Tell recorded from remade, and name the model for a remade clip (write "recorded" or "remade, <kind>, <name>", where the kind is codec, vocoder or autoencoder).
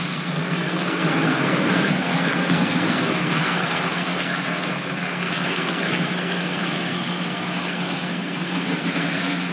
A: remade, codec, SNAC